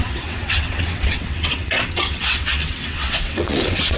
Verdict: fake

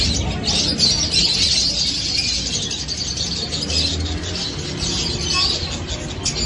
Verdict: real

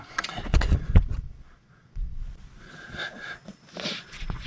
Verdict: fake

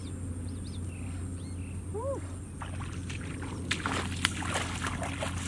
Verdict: real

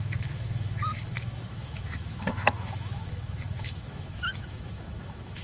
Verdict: fake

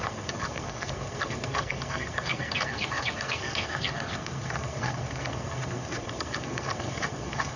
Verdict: fake